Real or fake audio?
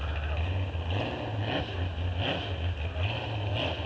real